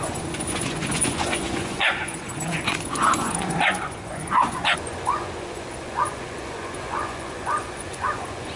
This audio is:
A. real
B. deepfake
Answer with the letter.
B